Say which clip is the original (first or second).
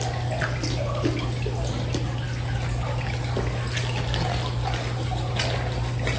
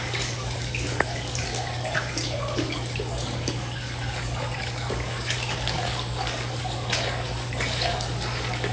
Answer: first